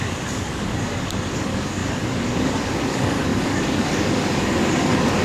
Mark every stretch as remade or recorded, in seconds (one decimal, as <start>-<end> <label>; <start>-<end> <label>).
0.0-5.2 remade